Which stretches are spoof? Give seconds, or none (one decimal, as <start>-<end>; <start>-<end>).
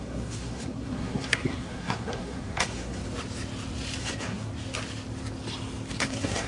0.0-3.0; 4.0-4.5; 5.9-6.5